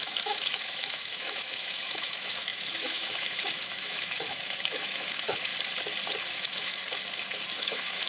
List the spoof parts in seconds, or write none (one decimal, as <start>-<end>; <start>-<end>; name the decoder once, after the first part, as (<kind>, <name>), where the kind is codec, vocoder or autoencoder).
0.0-5.5 (autoencoder, DAC-VAE); 6.3-6.8; 7.6-8.1